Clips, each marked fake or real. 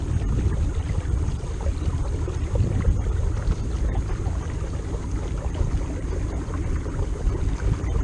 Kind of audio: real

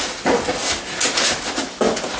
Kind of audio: real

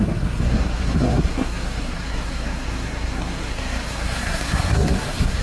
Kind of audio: fake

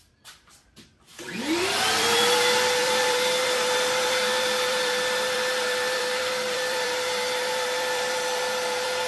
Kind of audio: fake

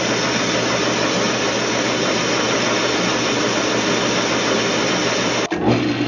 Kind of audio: real